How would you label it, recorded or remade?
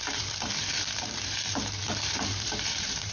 remade